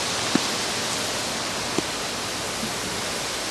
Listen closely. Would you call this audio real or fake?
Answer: real